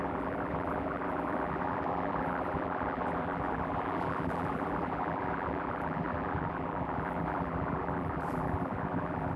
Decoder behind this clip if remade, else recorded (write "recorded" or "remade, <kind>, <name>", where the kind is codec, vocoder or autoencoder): remade, vocoder, BigVGAN v2